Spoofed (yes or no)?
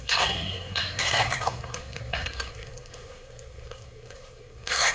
yes